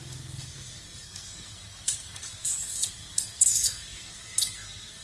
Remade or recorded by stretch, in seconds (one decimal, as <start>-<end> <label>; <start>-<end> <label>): 0.0-5.0 remade